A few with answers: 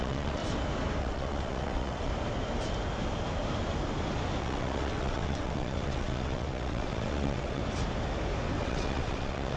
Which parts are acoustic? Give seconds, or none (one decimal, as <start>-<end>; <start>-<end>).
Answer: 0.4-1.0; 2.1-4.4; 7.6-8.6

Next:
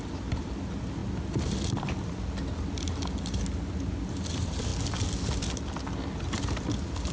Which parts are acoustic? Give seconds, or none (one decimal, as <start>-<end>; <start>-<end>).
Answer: 1.0-4.1; 4.7-6.0

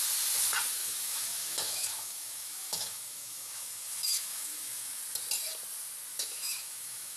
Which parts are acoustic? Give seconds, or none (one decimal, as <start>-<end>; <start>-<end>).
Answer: 0.0-0.8; 5.0-6.1

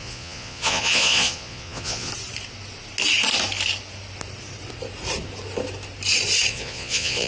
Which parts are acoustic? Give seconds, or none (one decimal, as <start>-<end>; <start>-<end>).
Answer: 2.1-6.5

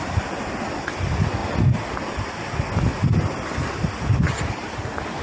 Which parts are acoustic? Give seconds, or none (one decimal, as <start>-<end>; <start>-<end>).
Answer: 0.0-5.2

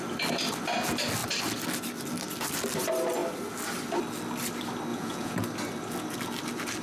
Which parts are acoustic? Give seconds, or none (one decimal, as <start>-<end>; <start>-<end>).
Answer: 0.0-4.9; 5.4-6.8

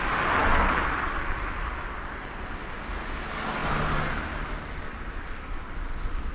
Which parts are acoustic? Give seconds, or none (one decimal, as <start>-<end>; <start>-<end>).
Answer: 0.0-6.3